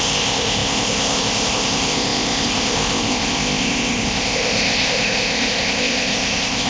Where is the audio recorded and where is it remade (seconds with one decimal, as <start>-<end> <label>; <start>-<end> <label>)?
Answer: 0.0-6.7 remade

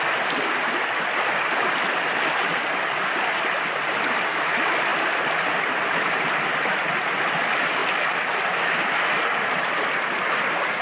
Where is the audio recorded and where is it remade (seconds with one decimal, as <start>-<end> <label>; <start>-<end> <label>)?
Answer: 0.0-7.8 recorded; 7.8-8.4 remade; 8.4-10.8 recorded

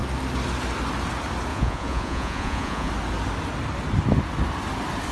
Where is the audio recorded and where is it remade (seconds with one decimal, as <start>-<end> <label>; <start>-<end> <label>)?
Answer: 0.0-1.5 recorded; 1.5-2.9 remade; 2.9-5.1 recorded

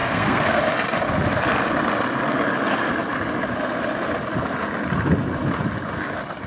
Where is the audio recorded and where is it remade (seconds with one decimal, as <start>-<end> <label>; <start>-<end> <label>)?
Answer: 0.0-0.6 remade; 0.6-6.5 recorded